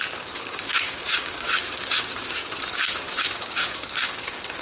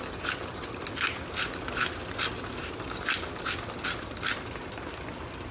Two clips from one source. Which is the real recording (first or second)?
second